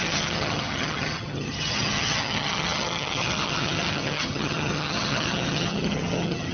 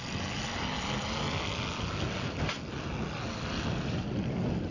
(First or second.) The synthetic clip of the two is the first